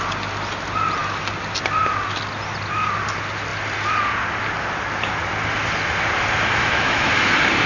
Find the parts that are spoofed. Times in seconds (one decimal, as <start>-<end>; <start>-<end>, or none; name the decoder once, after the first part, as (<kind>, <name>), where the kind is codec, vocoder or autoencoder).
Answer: 6.6-7.3 (autoencoder, DAC-VAE)